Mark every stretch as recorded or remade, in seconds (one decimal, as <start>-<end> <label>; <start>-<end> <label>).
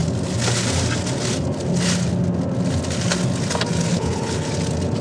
0.0-3.9 recorded; 3.9-4.5 remade; 4.5-5.0 recorded